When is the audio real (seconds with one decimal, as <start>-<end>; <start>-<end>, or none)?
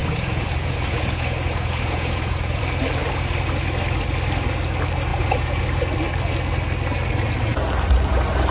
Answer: 2.6-5.1; 5.6-8.5